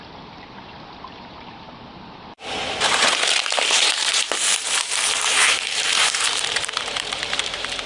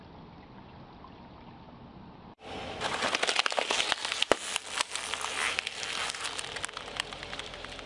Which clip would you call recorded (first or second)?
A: second